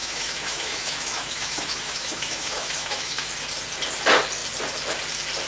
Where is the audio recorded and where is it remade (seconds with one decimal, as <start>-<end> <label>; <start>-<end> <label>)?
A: 0.0-3.3 remade; 3.3-5.5 recorded